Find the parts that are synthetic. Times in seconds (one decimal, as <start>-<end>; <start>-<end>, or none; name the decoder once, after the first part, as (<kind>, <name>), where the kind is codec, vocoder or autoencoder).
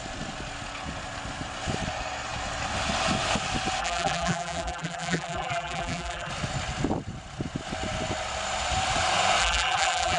3.8-6.3 (vocoder, BigVGAN v2); 9.4-10.2